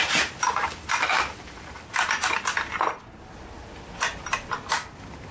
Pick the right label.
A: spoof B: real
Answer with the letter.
B